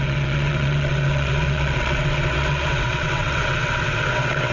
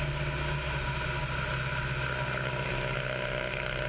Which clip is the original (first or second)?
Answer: second